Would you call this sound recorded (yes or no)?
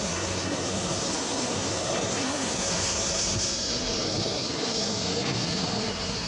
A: no